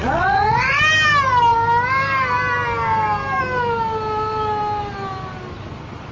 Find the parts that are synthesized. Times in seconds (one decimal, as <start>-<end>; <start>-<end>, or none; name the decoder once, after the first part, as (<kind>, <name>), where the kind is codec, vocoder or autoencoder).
0.0-0.8 (vocoder, WaveNeXt)